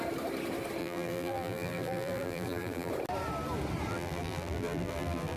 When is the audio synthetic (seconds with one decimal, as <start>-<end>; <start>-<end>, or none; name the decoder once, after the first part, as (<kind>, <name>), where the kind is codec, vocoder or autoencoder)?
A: 0.8-2.9 (vocoder, BigVGAN v2); 3.9-5.4

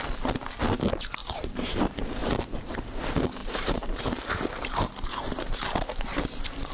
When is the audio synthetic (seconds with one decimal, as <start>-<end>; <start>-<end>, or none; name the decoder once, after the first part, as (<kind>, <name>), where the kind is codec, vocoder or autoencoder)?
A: 1.2-1.8 (vocoder, BigVGAN v2); 3.4-6.2

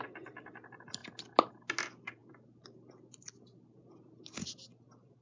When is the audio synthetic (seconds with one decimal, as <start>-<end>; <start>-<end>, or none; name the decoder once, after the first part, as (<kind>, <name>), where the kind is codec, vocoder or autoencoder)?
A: none

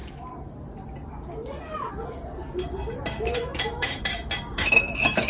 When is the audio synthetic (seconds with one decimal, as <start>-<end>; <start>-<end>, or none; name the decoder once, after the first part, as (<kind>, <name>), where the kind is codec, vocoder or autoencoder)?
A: 3.3-4.0 (autoencoder, DAC-VAE); 4.6-5.3